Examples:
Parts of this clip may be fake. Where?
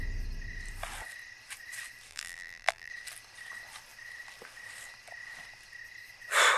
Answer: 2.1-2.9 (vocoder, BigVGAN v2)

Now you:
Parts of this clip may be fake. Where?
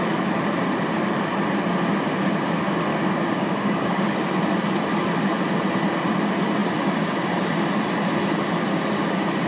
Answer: 2.9-4.1 (codec, DAC)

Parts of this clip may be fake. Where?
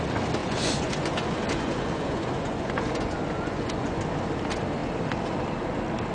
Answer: 0.4-4.0 (vocoder, Vocos)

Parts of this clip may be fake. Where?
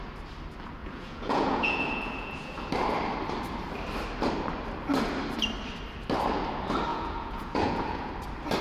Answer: 0.8-2.7 (vocoder, Vocos); 6.9-8.1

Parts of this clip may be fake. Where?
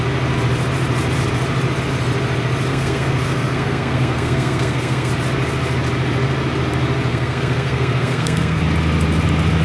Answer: 2.7-5.1 (codec, SNAC); 7.1-8.6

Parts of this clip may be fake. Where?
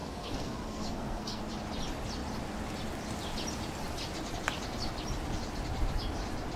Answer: 0.0-1.4 (codec, SNAC)